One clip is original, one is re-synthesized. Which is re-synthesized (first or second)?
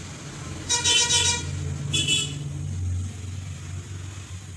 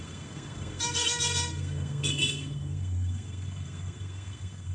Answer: second